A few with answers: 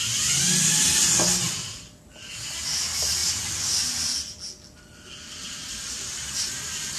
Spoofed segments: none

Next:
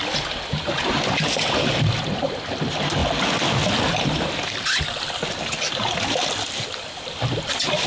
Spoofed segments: none

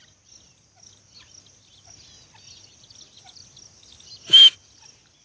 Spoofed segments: none

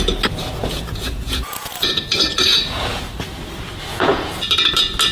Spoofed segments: 0.6-2.0 (vocoder, Vocos); 2.5-3.1; 3.9-4.4

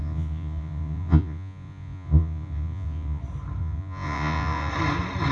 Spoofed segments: 0.0-3.2 (vocoder, Vocos); 3.6-4.7

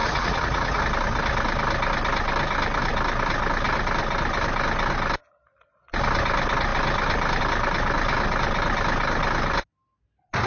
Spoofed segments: 0.0-0.8 (vocoder, Vocos)

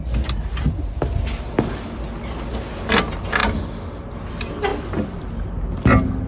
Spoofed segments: none

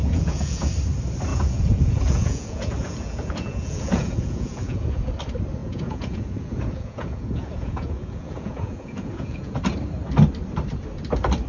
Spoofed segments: 0.0-0.7 (vocoder, Vocos); 1.3-5.1; 5.6-9.6